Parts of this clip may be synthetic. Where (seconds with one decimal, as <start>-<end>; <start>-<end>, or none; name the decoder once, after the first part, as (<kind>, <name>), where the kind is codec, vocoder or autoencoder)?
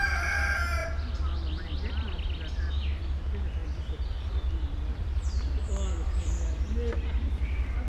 3.6-6.3 (vocoder, BigVGAN v2)